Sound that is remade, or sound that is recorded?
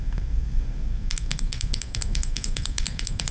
remade